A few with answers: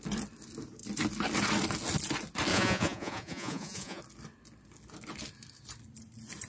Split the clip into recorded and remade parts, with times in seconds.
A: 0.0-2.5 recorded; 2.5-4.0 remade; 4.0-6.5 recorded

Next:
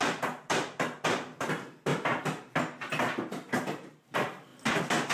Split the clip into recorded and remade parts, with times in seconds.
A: 0.0-5.1 recorded

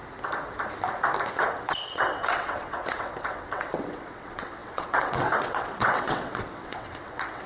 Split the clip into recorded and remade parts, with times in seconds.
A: 0.0-1.3 recorded; 1.3-7.5 remade

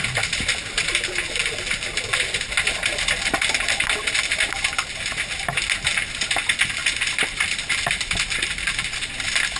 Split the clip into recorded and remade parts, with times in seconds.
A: 0.0-9.6 recorded

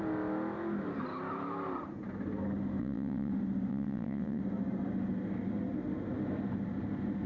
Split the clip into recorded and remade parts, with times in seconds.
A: 0.0-2.8 recorded; 2.8-3.3 remade; 3.3-3.7 recorded; 3.7-4.4 remade; 4.4-7.3 recorded

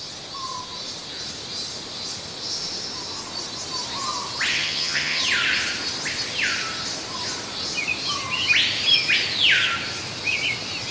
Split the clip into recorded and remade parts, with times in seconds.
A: 0.0-4.5 recorded; 4.5-5.2 remade; 5.2-10.9 recorded